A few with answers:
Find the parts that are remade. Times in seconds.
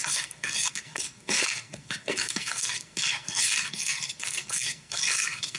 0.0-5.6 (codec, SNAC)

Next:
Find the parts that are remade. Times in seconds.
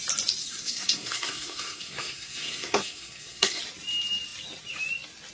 0.4-3.6 (codec, SNAC)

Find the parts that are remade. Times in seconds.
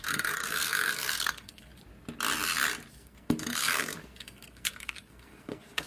0.0-1.7 (codec, SNAC); 2.9-5.9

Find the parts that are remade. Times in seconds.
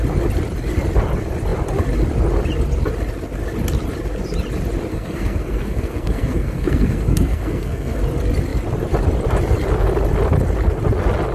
4.9-8.0 (codec, SNAC)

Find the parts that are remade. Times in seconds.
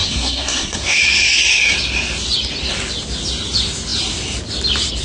0.0-1.0 (codec, SNAC)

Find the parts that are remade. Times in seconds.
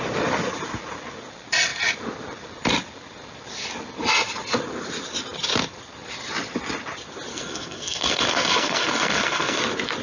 7.3-9.6 (codec, SNAC)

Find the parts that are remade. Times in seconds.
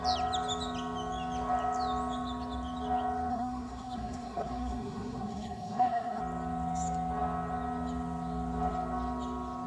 3.3-6.2 (codec, SNAC)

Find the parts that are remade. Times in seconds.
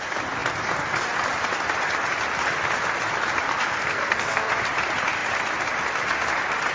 3.5-4.5 (codec, SNAC)